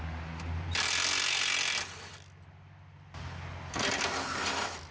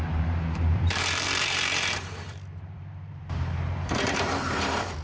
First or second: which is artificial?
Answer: second